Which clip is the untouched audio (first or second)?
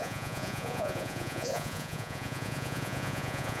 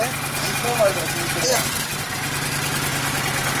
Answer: second